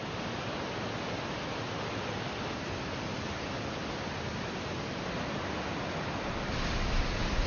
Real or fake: real